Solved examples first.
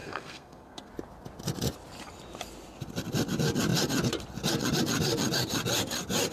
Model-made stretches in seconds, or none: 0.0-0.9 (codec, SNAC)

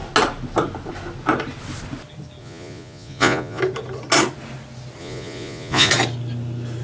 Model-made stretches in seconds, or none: 2.4-3.6 (vocoder, Vocos); 5.0-5.9

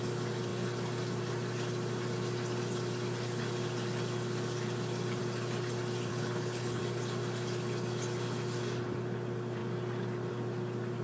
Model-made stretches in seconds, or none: 6.1-6.8 (codec, HILCodec)

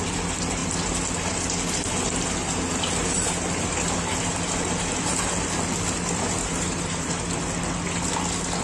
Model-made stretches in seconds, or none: 6.4-7.2 (vocoder, BigVGAN v2)

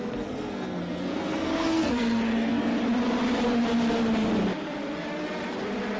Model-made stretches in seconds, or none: 0.0-2.7 (codec, SNAC)

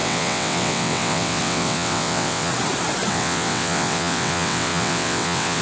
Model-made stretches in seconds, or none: 0.0-2.5 (vocoder, WaveNeXt); 3.1-5.6

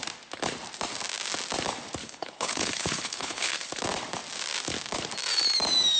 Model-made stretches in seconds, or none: 2.0-3.7 (codec, HILCodec)